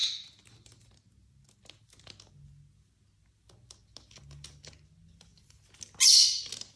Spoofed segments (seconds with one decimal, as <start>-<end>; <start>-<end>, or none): none